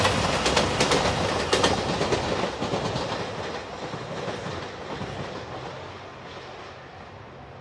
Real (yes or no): yes